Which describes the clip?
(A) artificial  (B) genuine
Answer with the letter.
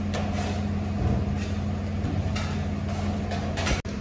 B